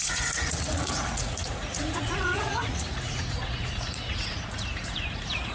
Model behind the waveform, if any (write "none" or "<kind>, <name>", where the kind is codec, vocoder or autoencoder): vocoder, Vocos